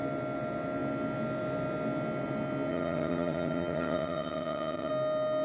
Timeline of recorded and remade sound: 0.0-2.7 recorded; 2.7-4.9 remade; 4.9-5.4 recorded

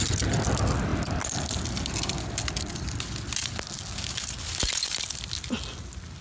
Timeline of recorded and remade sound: 0.0-6.2 recorded

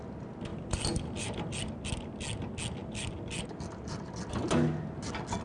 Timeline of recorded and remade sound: 0.0-0.5 recorded; 0.5-1.7 remade; 1.7-2.8 recorded; 2.8-4.3 remade; 4.3-5.4 recorded

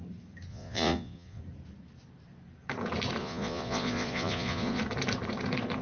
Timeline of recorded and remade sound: 0.0-0.5 recorded; 0.5-1.4 remade; 1.4-3.2 recorded; 3.2-4.8 remade; 4.8-5.8 recorded

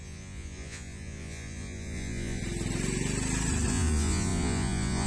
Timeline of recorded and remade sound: 0.0-2.4 remade; 2.4-3.7 recorded; 3.7-5.1 remade

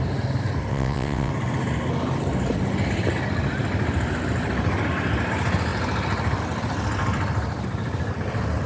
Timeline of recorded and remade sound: 0.0-0.7 recorded; 0.7-1.3 remade; 1.3-8.7 recorded